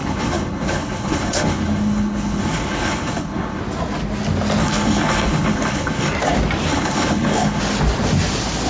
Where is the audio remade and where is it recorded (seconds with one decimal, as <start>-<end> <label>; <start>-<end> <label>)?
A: 0.0-3.6 remade; 3.6-4.6 recorded; 4.6-6.1 remade; 6.1-6.7 recorded; 6.7-7.6 remade; 7.6-8.7 recorded